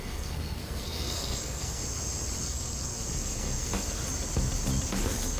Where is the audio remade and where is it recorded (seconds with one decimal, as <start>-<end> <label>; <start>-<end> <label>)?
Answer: 0.0-1.8 remade; 1.8-2.4 recorded; 2.4-4.0 remade; 4.0-4.9 recorded; 4.9-5.4 remade